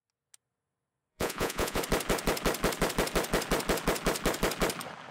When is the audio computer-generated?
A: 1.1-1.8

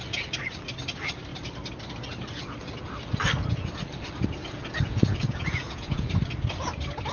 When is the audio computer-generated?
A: 4.4-6.1

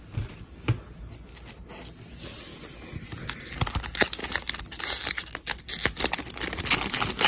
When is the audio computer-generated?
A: none

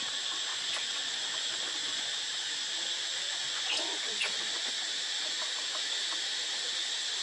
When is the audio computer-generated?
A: 0.5-4.8

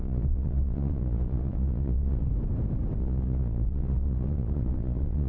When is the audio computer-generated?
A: 0.0-2.3; 3.0-5.3

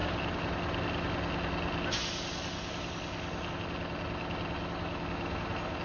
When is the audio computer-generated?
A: none

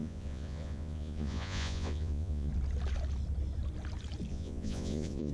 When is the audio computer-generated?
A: 0.0-2.5; 4.3-5.3